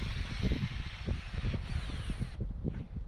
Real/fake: real